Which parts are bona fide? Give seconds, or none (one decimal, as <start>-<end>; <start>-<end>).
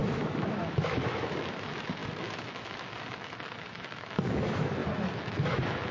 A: none